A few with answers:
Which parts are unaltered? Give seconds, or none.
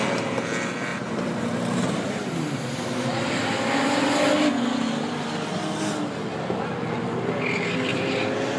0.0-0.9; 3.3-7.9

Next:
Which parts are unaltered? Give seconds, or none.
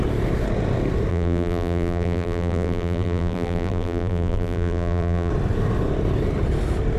0.0-1.1; 5.3-7.0